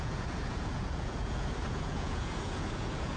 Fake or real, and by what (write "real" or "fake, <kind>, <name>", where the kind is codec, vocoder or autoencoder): fake, vocoder, Vocos